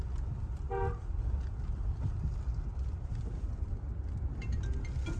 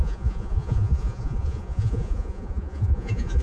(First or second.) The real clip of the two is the first